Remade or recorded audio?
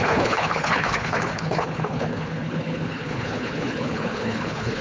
remade